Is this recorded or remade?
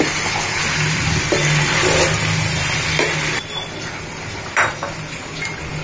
recorded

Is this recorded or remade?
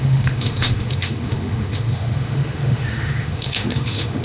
remade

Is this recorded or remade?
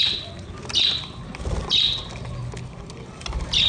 recorded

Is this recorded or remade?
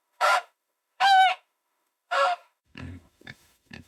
remade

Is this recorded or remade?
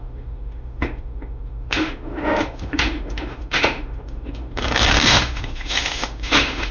remade